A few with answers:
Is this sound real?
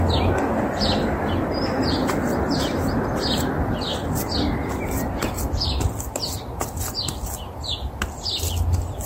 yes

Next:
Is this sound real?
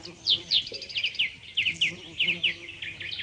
yes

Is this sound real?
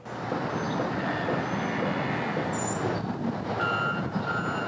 yes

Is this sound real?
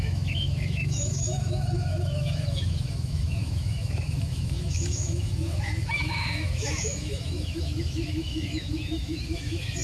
no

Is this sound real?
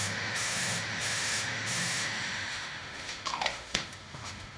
no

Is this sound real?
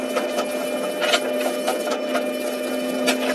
yes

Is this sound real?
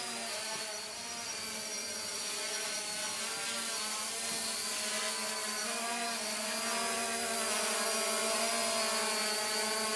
yes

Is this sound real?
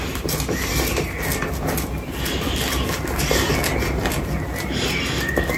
yes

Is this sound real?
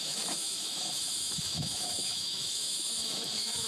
no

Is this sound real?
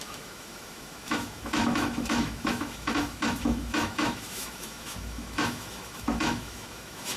no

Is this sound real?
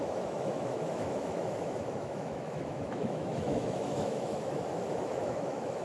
no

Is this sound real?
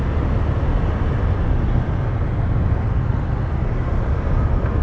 yes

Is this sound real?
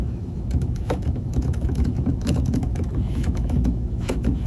no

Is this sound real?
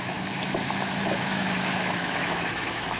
no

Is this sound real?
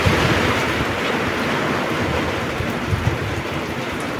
yes